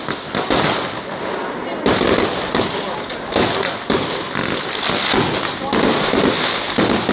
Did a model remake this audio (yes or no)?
no